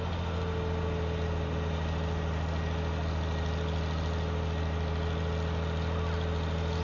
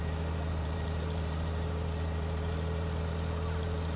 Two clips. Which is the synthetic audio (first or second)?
second